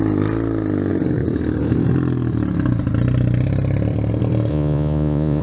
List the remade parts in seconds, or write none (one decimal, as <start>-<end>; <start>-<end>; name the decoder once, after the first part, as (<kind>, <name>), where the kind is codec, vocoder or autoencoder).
4.5-5.4 (vocoder, Vocos)